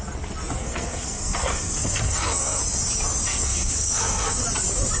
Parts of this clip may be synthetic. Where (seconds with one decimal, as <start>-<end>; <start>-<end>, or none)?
0.6-2.6; 3.3-4.4